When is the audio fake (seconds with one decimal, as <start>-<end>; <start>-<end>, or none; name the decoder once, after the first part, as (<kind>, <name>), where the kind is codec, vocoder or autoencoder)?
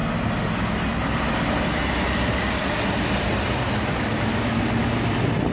none